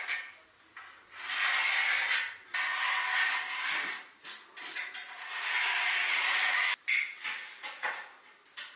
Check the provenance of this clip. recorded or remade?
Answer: recorded